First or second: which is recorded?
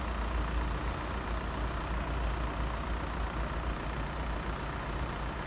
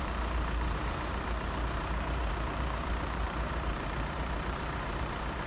first